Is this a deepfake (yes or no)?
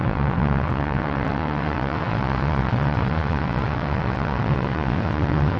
yes